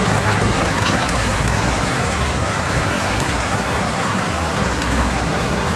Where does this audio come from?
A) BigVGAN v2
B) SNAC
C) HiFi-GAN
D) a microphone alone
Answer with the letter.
B